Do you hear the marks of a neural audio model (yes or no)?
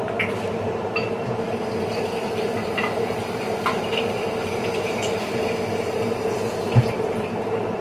yes